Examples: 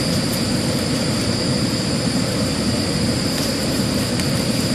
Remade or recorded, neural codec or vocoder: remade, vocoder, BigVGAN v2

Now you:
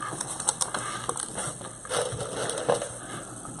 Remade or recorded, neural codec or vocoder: recorded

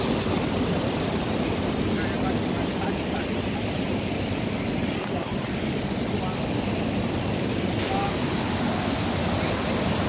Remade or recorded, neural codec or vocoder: recorded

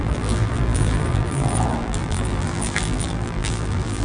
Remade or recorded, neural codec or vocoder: remade, vocoder, BigVGAN v2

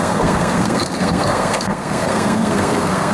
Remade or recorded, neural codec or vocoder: remade, codec, SNAC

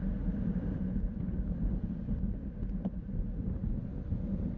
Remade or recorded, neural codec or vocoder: recorded